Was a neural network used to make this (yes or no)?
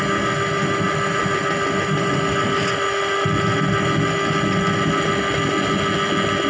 no